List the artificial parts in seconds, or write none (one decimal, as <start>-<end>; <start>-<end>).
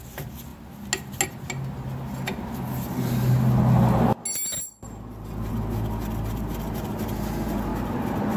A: none